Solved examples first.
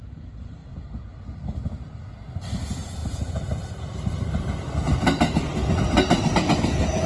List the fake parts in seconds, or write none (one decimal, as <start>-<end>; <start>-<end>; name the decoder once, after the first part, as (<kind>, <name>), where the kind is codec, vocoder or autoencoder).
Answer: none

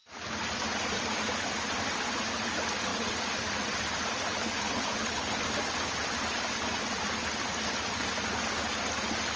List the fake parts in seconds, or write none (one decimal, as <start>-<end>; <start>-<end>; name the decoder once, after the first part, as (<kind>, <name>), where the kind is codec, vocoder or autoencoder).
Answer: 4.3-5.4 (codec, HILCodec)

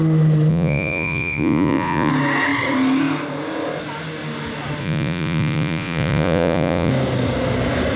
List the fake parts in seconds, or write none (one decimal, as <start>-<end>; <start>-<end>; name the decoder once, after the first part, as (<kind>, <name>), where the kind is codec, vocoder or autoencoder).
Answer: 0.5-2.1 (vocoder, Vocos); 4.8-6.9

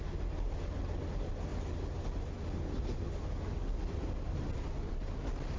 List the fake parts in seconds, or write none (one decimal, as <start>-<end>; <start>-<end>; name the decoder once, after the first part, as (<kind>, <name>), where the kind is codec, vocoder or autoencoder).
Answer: none